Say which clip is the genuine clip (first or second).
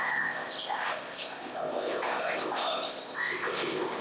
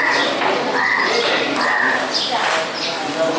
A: second